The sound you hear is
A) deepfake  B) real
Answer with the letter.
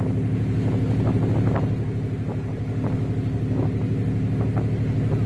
B